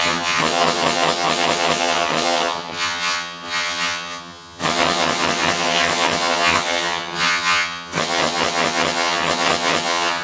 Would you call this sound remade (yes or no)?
yes